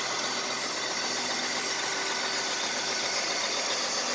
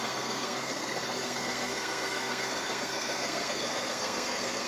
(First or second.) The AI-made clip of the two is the second